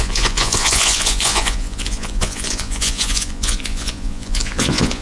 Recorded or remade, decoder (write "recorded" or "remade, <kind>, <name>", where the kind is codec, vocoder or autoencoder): remade, vocoder, Vocos